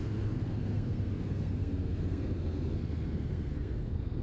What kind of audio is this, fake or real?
fake